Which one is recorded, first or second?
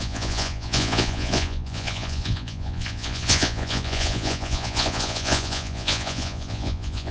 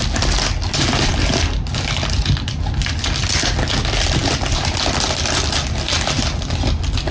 second